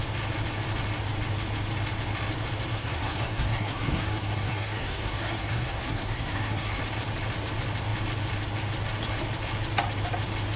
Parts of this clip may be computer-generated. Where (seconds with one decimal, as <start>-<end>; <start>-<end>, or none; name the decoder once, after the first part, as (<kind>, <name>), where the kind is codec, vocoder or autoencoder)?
2.7-6.8 (codec, SNAC)

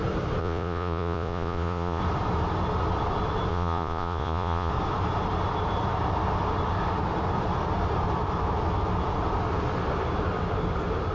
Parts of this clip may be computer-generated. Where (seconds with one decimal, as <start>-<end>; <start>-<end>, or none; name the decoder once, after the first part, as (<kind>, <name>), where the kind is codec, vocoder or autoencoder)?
0.4-2.0 (vocoder, Vocos); 3.5-4.7